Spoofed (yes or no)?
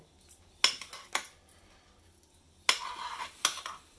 no